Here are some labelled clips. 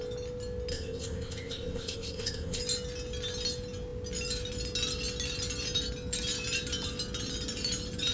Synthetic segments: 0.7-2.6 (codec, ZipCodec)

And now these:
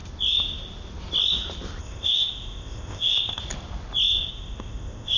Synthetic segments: 1.8-3.4 (codec, ZipCodec); 4.3-5.2

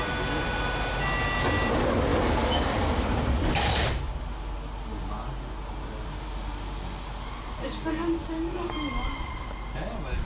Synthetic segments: none

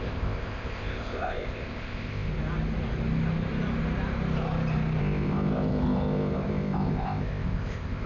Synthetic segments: 0.0-2.3 (codec, ZipCodec); 5.0-8.1

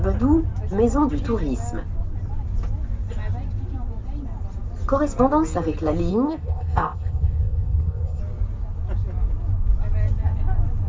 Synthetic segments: 6.1-8.2 (codec, ZipCodec)

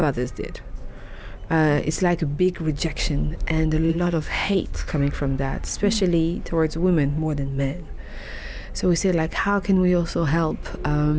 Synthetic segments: 3.9-4.9 (codec, ZipCodec)

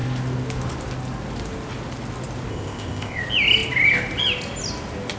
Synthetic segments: 2.5-3.2 (codec, ZipCodec)

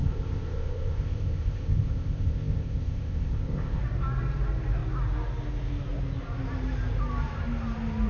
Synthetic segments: 0.0-3.8 (codec, ZipCodec)